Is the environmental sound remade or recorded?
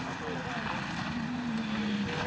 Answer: recorded